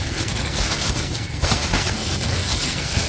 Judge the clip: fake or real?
fake